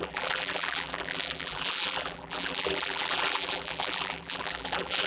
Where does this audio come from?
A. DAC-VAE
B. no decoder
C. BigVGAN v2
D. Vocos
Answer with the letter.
C